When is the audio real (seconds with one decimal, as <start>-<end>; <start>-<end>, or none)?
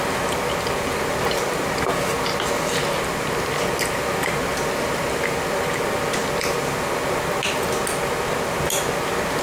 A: 0.0-9.4